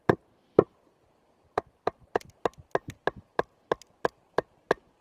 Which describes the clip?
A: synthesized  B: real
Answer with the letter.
B